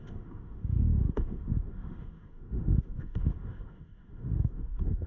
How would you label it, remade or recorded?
remade